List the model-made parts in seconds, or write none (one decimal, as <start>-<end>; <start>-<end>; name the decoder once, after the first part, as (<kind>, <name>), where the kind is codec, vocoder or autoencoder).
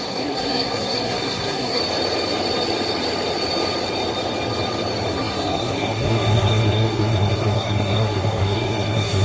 0.0-1.8 (codec, SNAC); 5.1-9.2